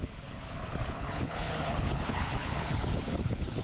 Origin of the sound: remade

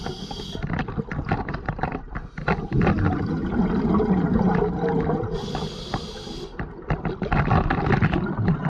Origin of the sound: recorded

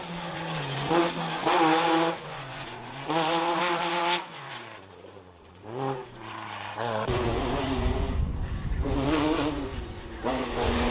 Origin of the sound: remade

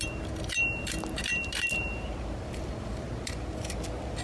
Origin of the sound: remade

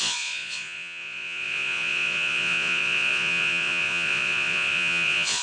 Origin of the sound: remade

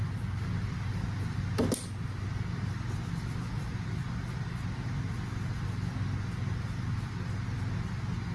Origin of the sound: recorded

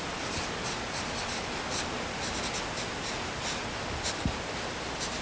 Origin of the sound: recorded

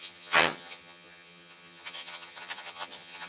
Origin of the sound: remade